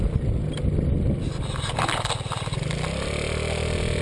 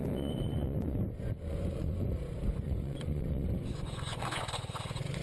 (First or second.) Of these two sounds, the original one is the first